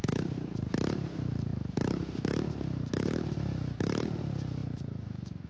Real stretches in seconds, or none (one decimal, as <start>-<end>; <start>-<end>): 0.0-5.5